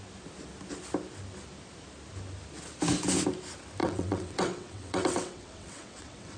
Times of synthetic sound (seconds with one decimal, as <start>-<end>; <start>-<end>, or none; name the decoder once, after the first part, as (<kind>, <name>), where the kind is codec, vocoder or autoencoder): 3.8-6.4 (vocoder, WaveNeXt)